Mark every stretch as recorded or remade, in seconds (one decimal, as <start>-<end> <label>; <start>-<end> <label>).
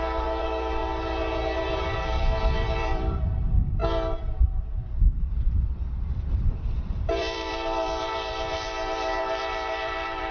0.0-0.8 remade; 0.8-1.8 recorded; 1.8-3.8 remade; 3.8-4.9 recorded; 4.9-10.3 remade